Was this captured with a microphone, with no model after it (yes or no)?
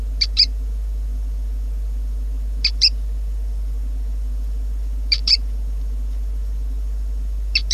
no